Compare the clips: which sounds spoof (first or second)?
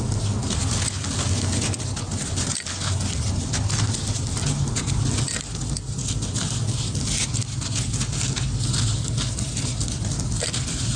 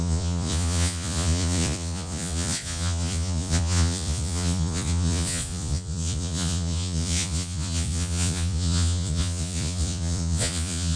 second